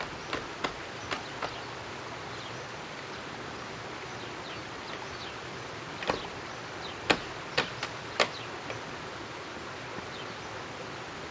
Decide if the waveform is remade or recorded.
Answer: recorded